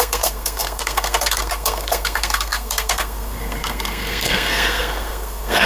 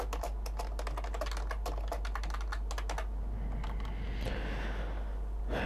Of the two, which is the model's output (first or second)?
first